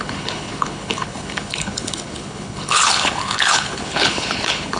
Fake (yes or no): yes